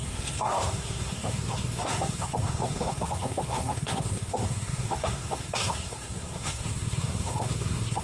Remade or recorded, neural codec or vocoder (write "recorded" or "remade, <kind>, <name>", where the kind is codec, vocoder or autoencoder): remade, codec, SNAC